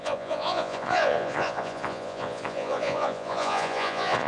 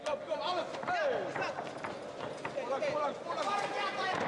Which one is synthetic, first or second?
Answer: first